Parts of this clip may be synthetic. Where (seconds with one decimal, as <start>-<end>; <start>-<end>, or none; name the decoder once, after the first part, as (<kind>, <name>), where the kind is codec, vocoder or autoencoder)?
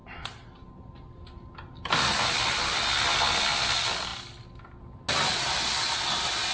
none